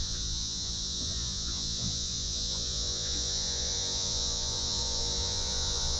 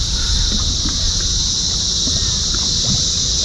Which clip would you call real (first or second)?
second